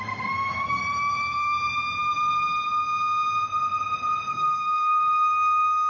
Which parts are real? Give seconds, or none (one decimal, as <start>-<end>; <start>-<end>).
0.8-4.3